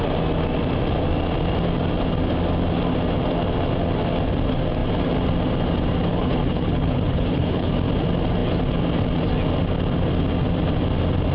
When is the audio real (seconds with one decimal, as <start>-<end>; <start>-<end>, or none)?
0.0-6.1; 7.7-11.3